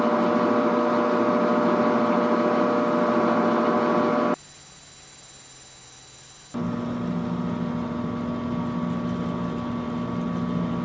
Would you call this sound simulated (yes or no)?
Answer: no